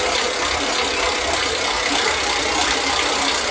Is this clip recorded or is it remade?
recorded